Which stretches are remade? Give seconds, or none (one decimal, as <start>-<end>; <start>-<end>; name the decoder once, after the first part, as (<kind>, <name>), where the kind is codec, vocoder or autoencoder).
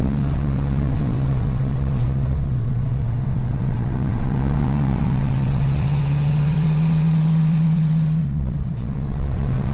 0.0-9.7 (vocoder, WaveNeXt)